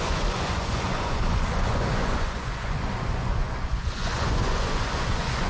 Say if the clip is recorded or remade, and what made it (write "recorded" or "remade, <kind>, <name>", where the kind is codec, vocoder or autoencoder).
remade, vocoder, Vocos